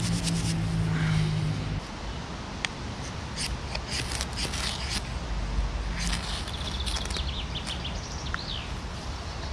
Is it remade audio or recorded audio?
recorded